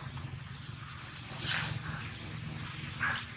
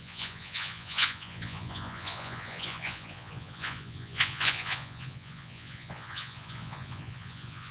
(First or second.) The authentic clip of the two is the first